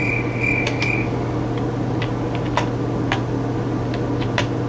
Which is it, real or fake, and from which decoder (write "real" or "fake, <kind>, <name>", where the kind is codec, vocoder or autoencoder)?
real